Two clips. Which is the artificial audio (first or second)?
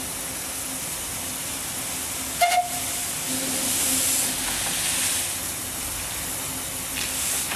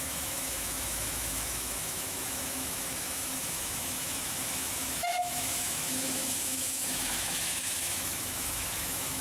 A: second